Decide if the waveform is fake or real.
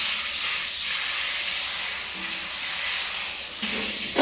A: real